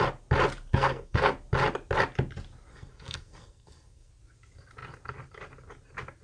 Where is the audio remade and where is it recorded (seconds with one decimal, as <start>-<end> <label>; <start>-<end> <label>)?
0.0-0.7 recorded; 0.7-1.3 remade; 1.3-2.7 recorded; 2.7-4.1 remade; 4.1-6.2 recorded